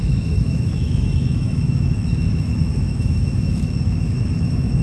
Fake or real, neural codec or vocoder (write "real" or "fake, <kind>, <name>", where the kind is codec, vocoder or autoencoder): fake, autoencoder, DAC-VAE